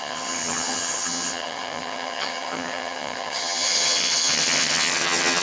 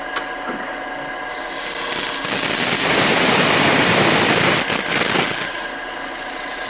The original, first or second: second